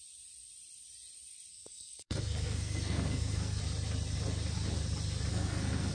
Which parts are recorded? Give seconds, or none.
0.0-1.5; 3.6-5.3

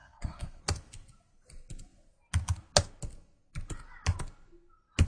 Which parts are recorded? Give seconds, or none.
0.6-5.1